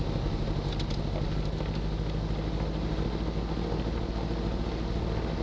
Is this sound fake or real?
real